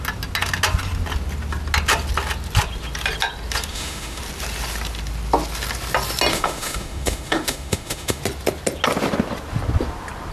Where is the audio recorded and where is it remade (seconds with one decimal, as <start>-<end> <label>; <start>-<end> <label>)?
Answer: 0.0-3.7 recorded; 3.7-4.2 remade; 4.2-6.3 recorded; 6.3-8.2 remade; 8.2-10.3 recorded